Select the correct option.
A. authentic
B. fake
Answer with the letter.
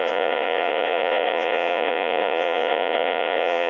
B